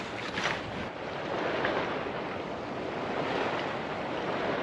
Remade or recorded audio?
recorded